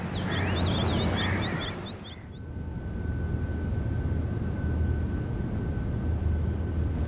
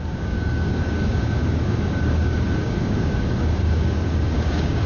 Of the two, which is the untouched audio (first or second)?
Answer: first